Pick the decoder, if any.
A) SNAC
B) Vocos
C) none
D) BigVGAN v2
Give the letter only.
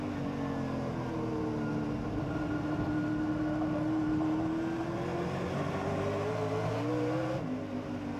C